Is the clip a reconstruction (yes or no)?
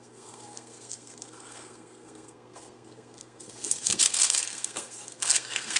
yes